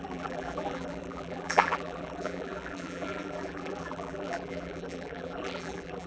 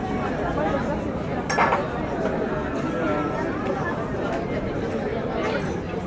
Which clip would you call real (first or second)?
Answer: second